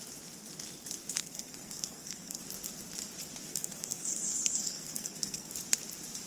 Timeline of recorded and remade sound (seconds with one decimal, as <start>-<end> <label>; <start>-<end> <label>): 0.0-1.2 recorded; 1.2-2.4 remade; 2.4-3.5 recorded; 3.5-5.5 remade; 5.5-6.3 recorded

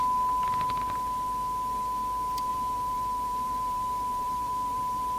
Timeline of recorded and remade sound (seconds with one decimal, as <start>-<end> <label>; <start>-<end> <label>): 0.0-2.5 recorded; 2.5-5.2 remade

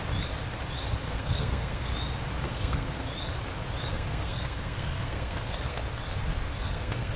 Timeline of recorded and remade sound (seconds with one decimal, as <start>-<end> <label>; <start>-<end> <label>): 0.0-1.0 recorded; 1.0-1.9 remade; 1.9-2.4 recorded; 2.4-3.1 remade; 3.1-3.9 recorded; 3.9-5.8 remade; 5.8-6.6 recorded; 6.6-7.2 remade

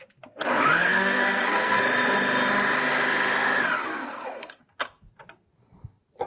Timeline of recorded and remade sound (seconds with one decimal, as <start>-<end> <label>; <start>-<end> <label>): 0.0-0.8 recorded; 0.8-1.8 remade; 1.8-3.9 recorded; 3.9-4.6 remade; 4.6-6.3 recorded

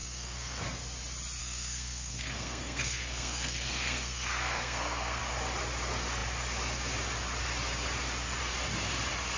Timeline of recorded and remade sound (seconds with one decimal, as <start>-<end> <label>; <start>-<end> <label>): 0.0-0.6 remade; 0.6-1.4 recorded; 1.4-5.2 remade; 5.2-9.4 recorded

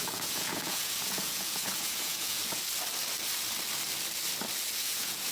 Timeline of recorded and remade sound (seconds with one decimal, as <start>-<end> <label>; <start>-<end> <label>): 0.0-2.6 remade; 2.6-4.8 recorded; 4.8-5.3 remade

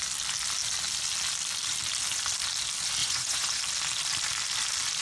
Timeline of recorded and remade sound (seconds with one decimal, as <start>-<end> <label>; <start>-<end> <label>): 0.0-3.0 recorded; 3.0-3.6 remade; 3.6-5.0 recorded

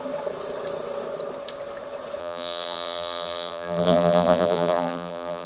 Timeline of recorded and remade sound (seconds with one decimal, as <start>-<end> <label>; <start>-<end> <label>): 0.0-2.2 recorded; 2.2-5.5 remade